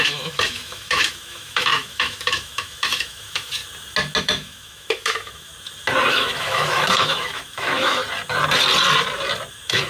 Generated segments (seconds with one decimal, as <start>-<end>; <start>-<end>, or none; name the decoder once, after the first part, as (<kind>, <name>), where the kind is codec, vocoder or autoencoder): 0.0-3.6 (autoencoder, DAC-VAE); 4.2-5.5; 6.1-8.0; 9.5-9.9